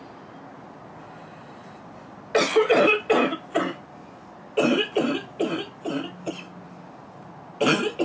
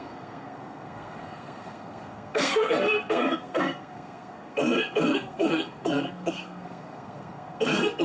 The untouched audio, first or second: first